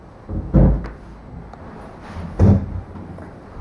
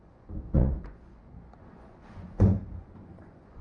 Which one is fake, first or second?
second